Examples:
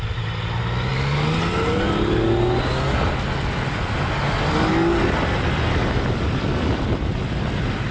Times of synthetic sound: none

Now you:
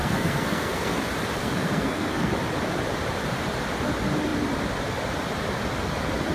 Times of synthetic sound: 0.0-1.0 (codec, SNAC); 1.4-2.3

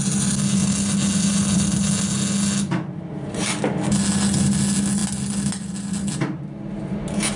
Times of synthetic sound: none

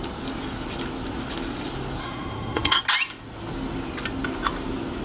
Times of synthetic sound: 2.0-2.8 (codec, SNAC)

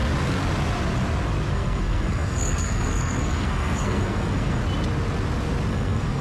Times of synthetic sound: 1.5-4.6 (codec, SNAC); 5.7-6.2

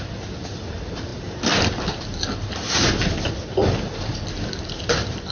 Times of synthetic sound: none

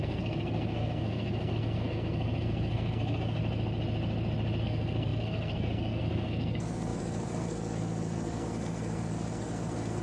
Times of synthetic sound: 0.0-3.4 (codec, SNAC); 4.6-10.0

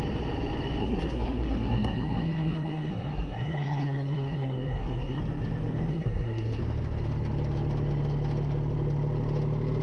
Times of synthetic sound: 0.8-5.2 (codec, SNAC); 5.9-6.6